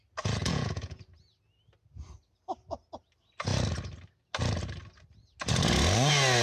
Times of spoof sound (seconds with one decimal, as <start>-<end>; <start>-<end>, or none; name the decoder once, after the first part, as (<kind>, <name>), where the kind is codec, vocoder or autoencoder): 0.4-1.0 (vocoder, Vocos)